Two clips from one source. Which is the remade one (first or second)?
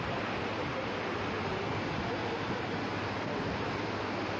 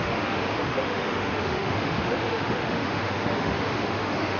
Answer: second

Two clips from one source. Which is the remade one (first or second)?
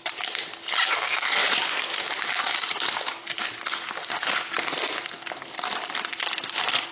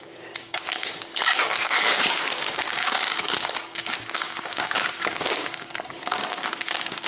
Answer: second